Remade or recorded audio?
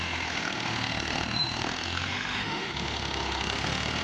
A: remade